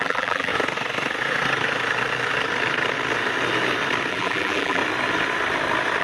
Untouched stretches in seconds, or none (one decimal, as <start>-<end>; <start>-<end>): 0.5-4.1; 4.8-6.0